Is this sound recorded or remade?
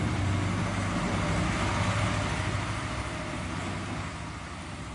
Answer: recorded